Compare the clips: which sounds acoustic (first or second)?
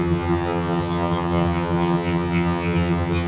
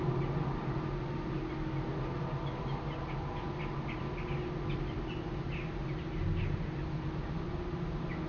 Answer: second